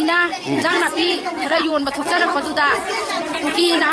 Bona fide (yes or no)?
no